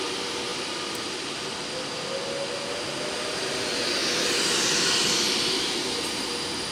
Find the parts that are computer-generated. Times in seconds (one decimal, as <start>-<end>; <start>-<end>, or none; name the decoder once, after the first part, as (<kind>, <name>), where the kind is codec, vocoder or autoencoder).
none